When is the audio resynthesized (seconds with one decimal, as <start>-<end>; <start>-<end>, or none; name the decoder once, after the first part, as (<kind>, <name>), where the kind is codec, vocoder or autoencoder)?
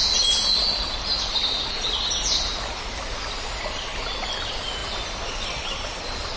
3.6-6.4 (vocoder, BigVGAN v2)